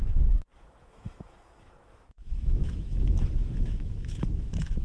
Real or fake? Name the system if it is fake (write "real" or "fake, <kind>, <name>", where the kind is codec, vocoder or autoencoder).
fake, autoencoder, DAC-VAE